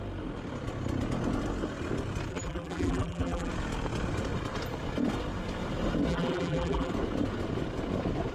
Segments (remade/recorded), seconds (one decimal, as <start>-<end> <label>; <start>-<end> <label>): 0.0-2.3 recorded; 2.3-3.5 remade; 3.5-6.1 recorded; 6.1-6.9 remade; 6.9-8.3 recorded